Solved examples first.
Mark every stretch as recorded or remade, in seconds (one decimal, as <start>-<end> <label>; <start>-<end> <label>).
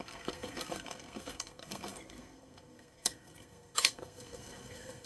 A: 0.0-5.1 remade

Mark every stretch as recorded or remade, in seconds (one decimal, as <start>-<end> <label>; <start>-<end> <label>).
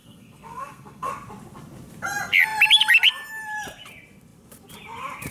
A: 0.0-1.1 remade; 1.1-5.3 recorded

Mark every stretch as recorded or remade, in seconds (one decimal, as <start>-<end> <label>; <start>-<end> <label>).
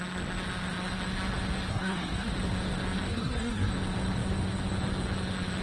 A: 0.0-1.7 recorded; 1.7-2.3 remade; 2.3-3.1 recorded; 3.1-3.7 remade; 3.7-5.6 recorded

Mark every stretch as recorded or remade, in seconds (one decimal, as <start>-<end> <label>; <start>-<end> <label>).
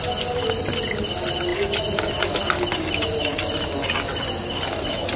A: 0.0-5.2 recorded